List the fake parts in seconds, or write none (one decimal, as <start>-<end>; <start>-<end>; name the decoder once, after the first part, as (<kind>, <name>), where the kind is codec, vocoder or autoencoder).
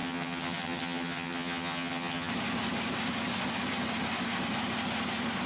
0.0-2.3 (vocoder, HiFi-GAN)